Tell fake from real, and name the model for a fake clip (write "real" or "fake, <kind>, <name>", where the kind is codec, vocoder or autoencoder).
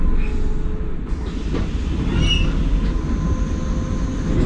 real